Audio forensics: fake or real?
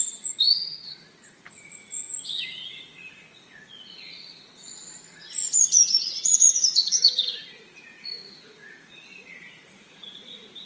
fake